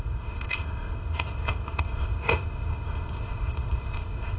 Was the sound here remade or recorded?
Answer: remade